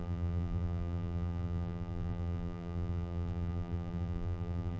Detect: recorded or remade remade